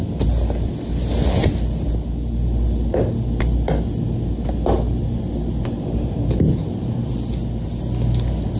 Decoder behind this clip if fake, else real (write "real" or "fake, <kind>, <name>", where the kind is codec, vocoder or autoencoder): real